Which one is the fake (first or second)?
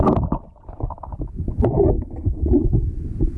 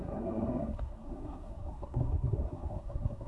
second